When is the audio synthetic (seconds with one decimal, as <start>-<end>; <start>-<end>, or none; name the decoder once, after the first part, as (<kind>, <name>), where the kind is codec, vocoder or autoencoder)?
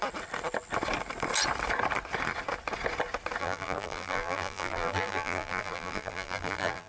3.4-6.9 (vocoder, BigVGAN v2)